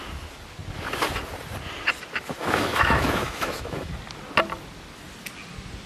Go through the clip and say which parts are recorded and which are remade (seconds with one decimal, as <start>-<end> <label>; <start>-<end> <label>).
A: 0.0-2.4 recorded; 2.4-3.9 remade; 3.9-5.9 recorded